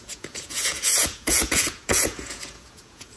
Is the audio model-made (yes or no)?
yes